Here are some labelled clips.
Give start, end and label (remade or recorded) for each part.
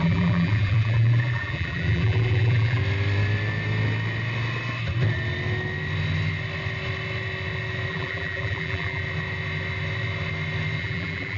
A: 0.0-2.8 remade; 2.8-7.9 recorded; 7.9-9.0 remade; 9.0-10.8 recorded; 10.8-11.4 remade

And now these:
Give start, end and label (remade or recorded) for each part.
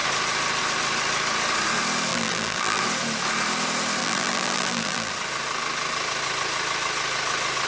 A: 0.0-2.1 recorded; 2.1-2.8 remade; 2.8-4.0 recorded; 4.0-5.1 remade; 5.1-7.7 recorded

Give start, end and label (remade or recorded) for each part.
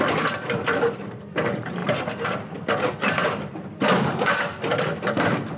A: 0.0-1.8 remade; 1.8-2.8 recorded; 2.8-5.6 remade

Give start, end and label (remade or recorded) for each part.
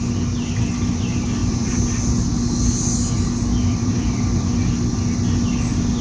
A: 0.0-1.4 recorded; 1.4-2.1 remade; 2.1-3.6 recorded; 3.6-4.7 remade; 4.7-6.0 recorded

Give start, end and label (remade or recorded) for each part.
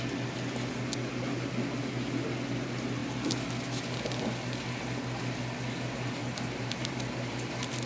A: 0.0-6.2 recorded; 6.2-6.9 remade; 6.9-7.9 recorded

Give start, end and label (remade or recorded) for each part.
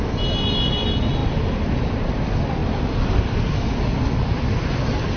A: 0.0-1.2 recorded; 1.2-2.1 remade; 2.1-2.6 recorded; 2.6-4.7 remade; 4.7-5.2 recorded